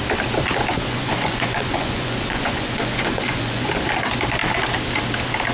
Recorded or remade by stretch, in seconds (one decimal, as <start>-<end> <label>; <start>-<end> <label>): 0.0-0.7 recorded; 0.7-3.7 remade; 3.7-5.5 recorded